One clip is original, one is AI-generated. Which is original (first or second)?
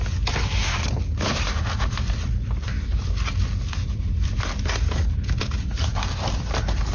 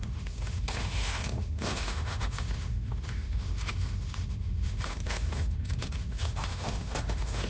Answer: first